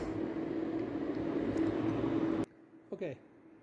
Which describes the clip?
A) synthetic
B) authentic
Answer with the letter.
B